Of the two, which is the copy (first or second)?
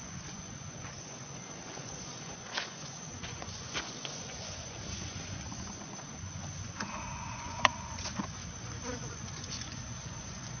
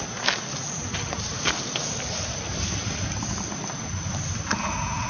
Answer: first